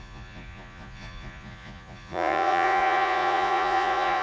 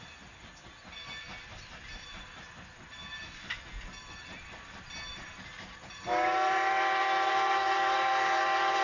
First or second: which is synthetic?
first